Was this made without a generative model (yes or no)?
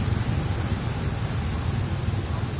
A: yes